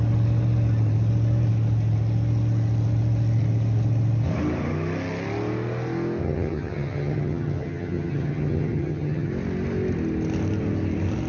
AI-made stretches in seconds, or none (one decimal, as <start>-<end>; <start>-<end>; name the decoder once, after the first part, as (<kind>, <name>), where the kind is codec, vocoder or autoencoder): 6.2-9.3 (vocoder, HiFi-GAN)